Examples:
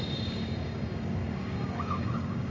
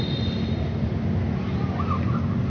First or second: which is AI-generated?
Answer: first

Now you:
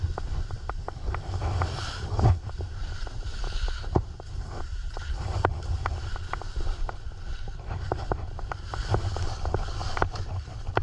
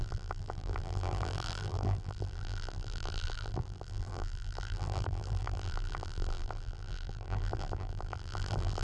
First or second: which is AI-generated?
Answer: second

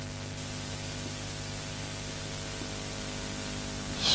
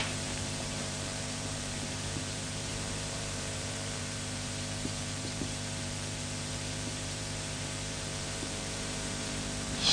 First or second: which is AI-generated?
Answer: second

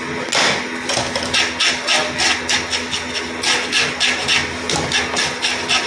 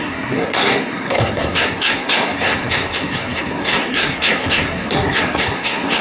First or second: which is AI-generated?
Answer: second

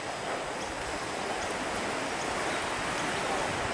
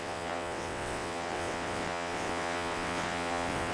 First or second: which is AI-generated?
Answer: second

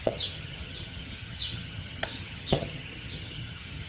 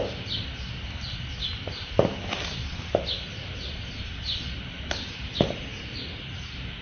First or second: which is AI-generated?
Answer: first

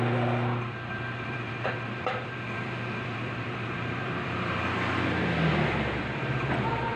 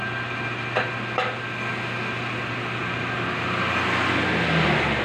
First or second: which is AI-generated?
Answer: first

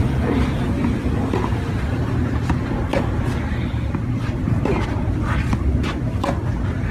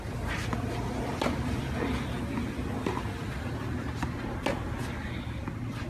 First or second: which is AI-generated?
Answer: first